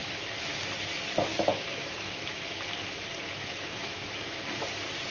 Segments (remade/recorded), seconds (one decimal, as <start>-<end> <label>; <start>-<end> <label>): 0.0-0.6 remade; 0.6-1.3 recorded; 1.3-2.4 remade; 2.4-3.4 recorded; 3.4-4.4 remade; 4.4-5.1 recorded